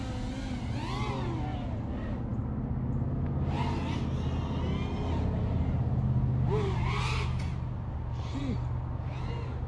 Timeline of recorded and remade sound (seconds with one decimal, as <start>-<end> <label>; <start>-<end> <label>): 0.0-9.7 recorded